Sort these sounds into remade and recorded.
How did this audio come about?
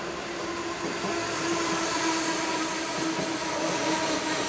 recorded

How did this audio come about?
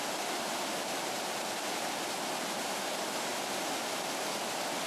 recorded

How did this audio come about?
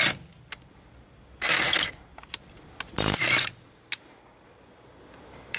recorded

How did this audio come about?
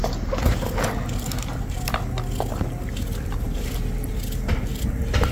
recorded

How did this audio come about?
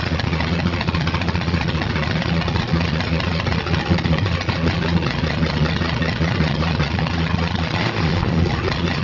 remade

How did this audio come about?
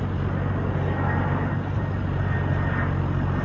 recorded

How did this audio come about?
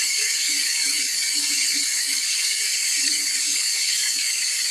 remade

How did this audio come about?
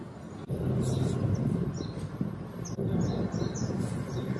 recorded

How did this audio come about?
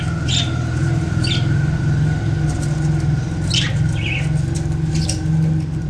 recorded